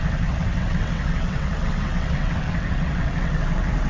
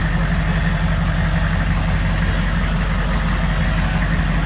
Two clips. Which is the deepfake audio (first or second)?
first